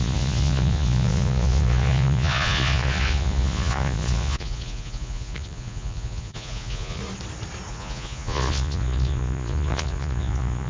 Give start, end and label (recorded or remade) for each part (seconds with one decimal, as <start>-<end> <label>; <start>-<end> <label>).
0.0-7.0 remade; 7.0-7.7 recorded; 7.7-10.7 remade